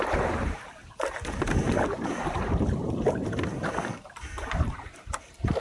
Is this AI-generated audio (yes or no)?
yes